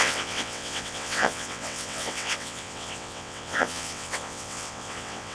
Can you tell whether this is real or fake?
fake